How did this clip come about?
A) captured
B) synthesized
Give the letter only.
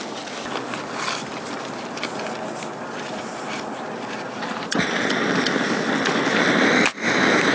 A